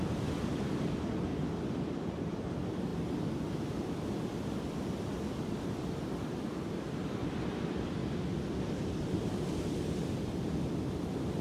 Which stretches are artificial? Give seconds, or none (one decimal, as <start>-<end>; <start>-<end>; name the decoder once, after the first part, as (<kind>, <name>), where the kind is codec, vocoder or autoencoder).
0.0-1.3 (vocoder, BigVGAN v2); 1.8-2.9; 3.9-8.0; 9.0-11.4